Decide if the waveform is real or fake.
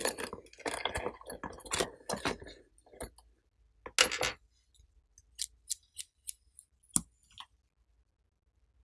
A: real